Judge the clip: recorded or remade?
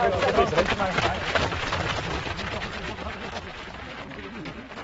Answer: remade